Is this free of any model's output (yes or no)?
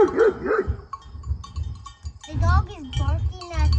yes